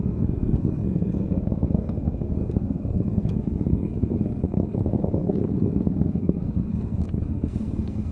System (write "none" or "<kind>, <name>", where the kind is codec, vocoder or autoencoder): codec, SNAC